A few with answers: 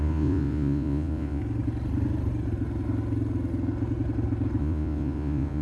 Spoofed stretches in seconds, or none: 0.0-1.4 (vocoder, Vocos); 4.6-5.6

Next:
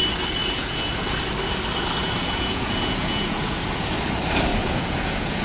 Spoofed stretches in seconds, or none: 0.4-0.9 (vocoder, Vocos); 2.2-3.9; 4.5-5.4